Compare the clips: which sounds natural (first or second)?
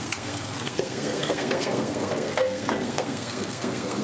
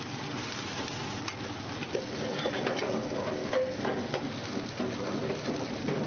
second